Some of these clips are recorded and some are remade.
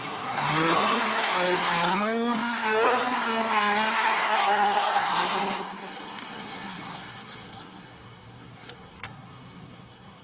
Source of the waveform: remade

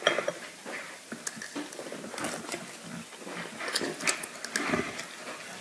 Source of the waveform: recorded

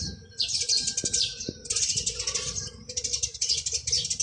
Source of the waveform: recorded